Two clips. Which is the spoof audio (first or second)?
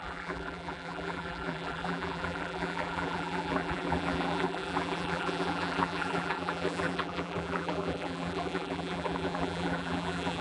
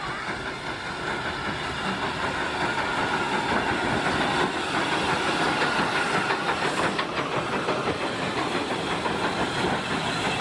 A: first